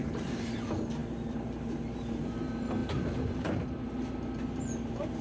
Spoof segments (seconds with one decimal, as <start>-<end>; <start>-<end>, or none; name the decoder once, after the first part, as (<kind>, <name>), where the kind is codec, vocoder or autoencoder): none